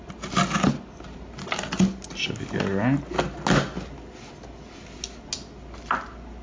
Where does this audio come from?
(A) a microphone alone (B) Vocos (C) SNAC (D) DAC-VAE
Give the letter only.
A